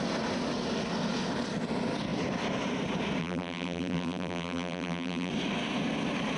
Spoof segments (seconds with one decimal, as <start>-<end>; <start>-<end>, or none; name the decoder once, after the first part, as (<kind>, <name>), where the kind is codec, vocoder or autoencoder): 3.2-5.3 (vocoder, BigVGAN v2)